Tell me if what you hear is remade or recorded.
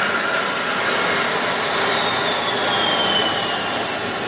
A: recorded